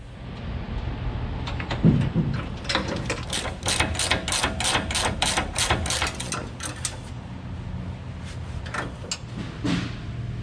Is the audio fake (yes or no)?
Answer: no